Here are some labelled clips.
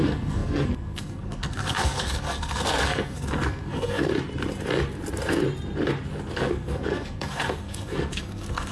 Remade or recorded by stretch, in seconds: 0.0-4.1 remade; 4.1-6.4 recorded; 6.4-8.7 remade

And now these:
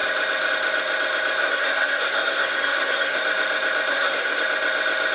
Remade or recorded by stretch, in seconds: 0.0-1.4 recorded; 1.4-3.2 remade; 3.2-3.9 recorded; 3.9-4.4 remade; 4.4-5.1 recorded

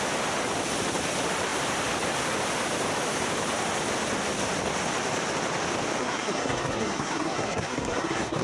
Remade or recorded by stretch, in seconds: 0.0-6.0 recorded; 6.0-8.4 remade

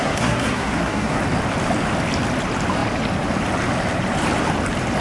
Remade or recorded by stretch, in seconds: 0.0-1.2 remade; 1.2-5.0 recorded